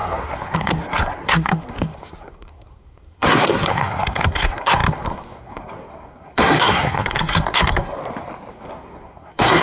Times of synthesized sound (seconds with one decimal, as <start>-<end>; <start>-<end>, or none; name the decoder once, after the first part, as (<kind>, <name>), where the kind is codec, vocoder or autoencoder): 0.0-8.0 (codec, SNAC); 8.5-9.6